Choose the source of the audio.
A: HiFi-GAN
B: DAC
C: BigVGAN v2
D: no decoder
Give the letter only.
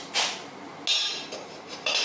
D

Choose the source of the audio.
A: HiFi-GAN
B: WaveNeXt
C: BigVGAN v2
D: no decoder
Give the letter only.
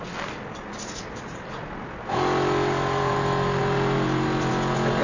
D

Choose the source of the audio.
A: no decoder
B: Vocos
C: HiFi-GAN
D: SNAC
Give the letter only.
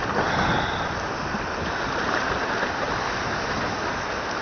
A